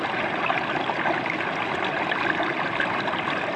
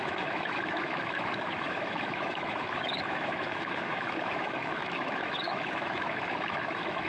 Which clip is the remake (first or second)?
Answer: second